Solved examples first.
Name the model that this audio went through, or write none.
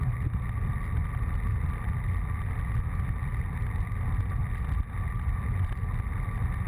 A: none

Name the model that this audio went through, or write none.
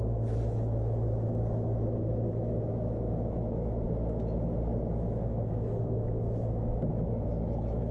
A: autoencoder, DAC-VAE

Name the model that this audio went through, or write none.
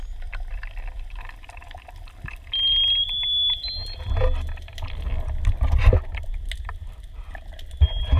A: none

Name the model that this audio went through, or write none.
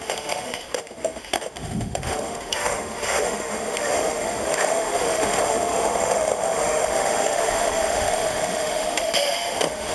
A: autoencoder, DAC-VAE